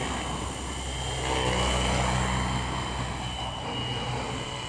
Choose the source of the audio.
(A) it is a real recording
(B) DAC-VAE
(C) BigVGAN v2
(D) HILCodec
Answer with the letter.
A